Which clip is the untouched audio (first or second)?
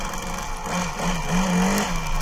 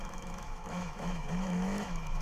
first